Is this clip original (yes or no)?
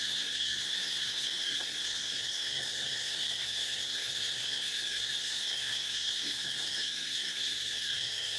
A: no